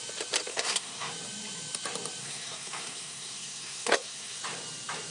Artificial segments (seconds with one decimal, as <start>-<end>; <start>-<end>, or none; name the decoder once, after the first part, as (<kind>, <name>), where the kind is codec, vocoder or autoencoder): 0.5-1.1 (codec, SNAC); 2.2-4.4